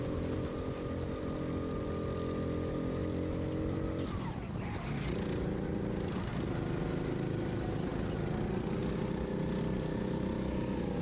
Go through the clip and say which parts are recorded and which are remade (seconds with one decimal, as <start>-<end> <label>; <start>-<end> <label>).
0.0-11.0 recorded

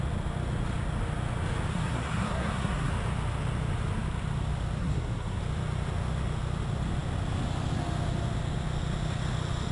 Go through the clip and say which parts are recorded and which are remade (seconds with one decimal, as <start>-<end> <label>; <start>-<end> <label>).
0.0-1.7 recorded; 1.7-2.9 remade; 2.9-4.8 recorded; 4.8-5.4 remade; 5.4-9.7 recorded